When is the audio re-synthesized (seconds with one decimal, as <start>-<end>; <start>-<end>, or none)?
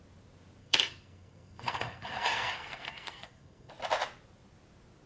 0.6-3.7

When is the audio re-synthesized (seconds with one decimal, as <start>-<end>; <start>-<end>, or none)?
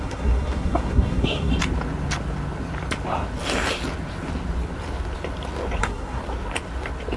0.0-1.5; 5.8-6.2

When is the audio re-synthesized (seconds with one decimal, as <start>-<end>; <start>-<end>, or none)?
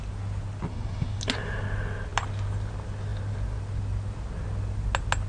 0.7-1.2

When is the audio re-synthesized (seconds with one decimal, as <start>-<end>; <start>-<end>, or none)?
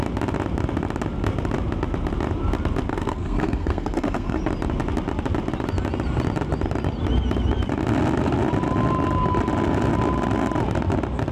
2.9-4.4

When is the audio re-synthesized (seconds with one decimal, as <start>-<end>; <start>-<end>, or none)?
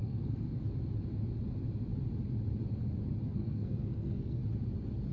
0.0-0.6; 3.3-4.4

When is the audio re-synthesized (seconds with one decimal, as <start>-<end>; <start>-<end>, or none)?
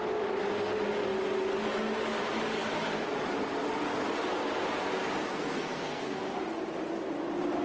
5.2-6.3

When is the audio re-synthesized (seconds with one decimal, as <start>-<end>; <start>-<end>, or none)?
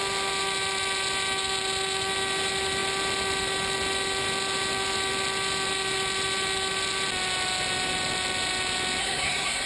9.0-9.7